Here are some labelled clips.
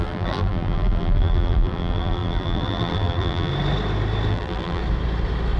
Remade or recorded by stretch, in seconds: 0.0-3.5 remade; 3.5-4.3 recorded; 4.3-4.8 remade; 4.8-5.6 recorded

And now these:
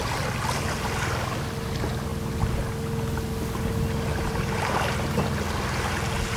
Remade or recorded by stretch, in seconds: 0.0-4.1 recorded; 4.1-4.7 remade; 4.7-6.4 recorded

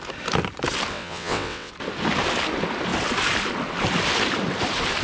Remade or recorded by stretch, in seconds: 0.0-0.9 recorded; 0.9-1.7 remade; 1.7-5.0 recorded

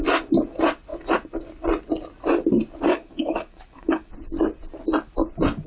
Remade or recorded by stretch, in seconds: 0.0-2.9 recorded; 2.9-4.1 remade; 4.1-5.7 recorded

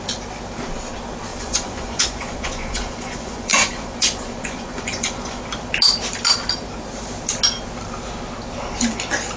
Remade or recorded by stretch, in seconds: 0.0-1.3 recorded; 1.3-5.4 remade; 5.4-9.4 recorded

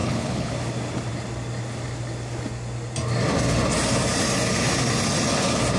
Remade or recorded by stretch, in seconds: 0.0-0.5 remade; 0.5-5.8 recorded

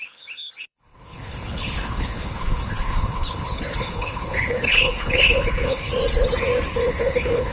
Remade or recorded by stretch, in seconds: 0.0-5.9 remade; 5.9-6.7 recorded; 6.7-7.5 remade

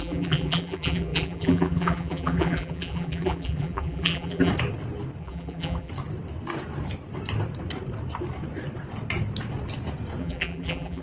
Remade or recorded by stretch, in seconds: 0.0-4.5 remade; 4.5-5.2 recorded; 5.2-5.9 remade; 5.9-10.2 recorded; 10.2-11.0 remade